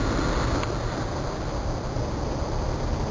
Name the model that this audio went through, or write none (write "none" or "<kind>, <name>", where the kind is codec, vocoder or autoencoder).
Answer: none